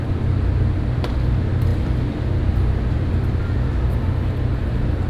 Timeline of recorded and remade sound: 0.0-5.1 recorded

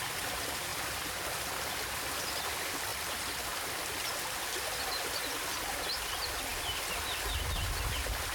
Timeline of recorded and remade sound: 0.0-8.3 recorded